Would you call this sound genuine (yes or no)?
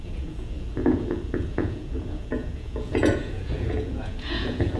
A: no